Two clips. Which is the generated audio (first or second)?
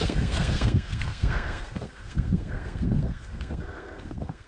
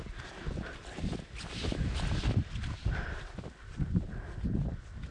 first